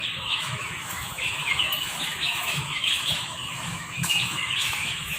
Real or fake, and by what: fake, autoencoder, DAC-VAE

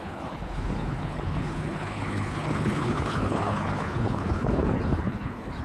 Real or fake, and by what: fake, codec, HILCodec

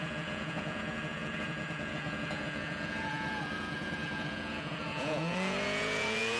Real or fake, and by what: fake, vocoder, Vocos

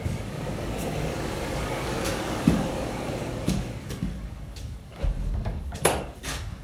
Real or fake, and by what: fake, codec, DAC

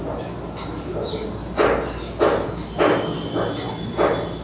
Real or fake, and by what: real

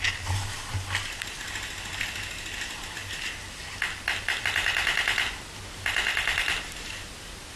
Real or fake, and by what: real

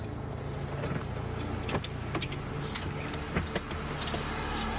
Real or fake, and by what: real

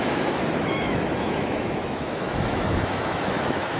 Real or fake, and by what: fake, autoencoder, DAC-VAE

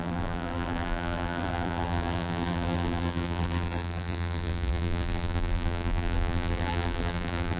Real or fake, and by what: fake, vocoder, BigVGAN v2